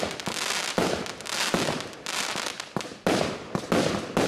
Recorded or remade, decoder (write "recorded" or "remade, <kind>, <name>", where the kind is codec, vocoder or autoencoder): recorded